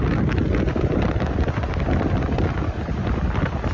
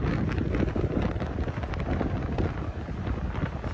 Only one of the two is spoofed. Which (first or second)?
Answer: first